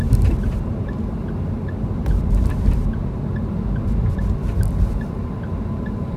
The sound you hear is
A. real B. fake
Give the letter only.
A